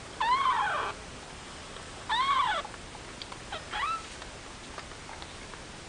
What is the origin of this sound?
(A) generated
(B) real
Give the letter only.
B